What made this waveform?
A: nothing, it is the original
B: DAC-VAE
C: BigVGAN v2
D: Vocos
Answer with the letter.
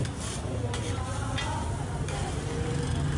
A